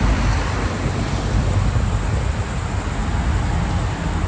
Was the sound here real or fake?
real